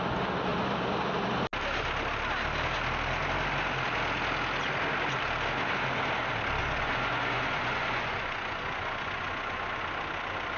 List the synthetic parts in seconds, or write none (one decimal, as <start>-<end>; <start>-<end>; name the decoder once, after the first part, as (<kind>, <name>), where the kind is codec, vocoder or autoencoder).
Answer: 6.6-9.8 (vocoder, Vocos)